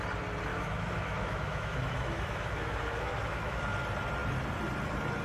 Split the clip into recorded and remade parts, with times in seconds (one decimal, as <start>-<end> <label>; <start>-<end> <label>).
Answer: 0.0-0.5 recorded; 0.5-3.6 remade; 3.6-5.2 recorded